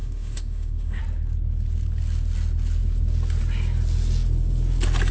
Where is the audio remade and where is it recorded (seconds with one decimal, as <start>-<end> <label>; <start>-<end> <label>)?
0.0-1.0 remade; 1.0-5.1 recorded